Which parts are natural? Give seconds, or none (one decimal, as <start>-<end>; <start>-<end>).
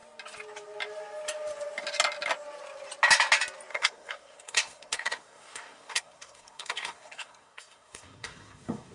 0.0-3.7